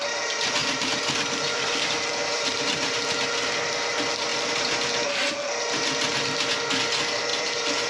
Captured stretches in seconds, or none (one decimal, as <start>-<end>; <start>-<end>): 0.0-0.6; 2.6-7.3